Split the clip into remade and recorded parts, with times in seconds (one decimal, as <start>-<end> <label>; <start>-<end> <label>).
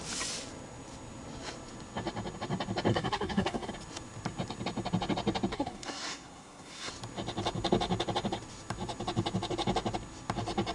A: 0.0-2.9 recorded; 2.9-3.7 remade; 3.7-5.5 recorded; 5.5-6.9 remade; 6.9-10.7 recorded